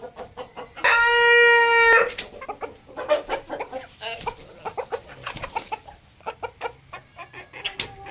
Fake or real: real